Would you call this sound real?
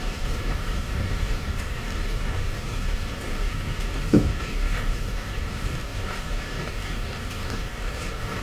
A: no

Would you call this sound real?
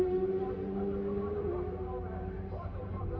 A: yes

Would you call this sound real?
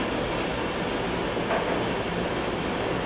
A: yes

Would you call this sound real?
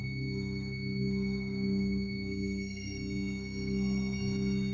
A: no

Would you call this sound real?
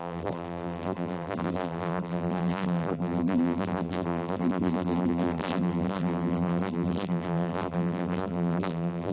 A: no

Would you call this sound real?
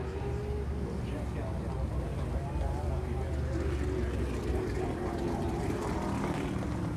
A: yes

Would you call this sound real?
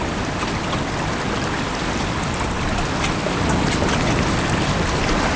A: yes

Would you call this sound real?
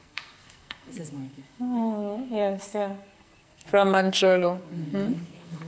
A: no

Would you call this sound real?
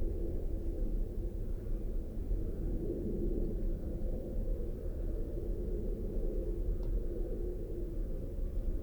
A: yes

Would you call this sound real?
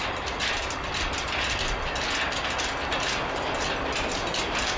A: yes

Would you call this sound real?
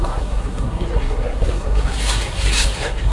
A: no